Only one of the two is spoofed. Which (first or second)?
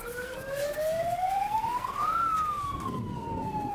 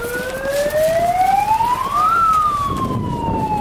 first